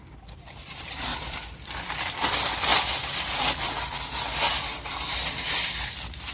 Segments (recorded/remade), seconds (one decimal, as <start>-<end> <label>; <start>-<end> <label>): 0.0-1.1 recorded; 1.1-1.9 remade; 1.9-6.3 recorded